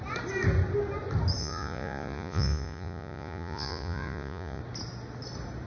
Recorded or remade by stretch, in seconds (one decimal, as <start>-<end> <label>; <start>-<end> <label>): 0.0-1.4 recorded; 1.4-4.6 remade; 4.6-5.7 recorded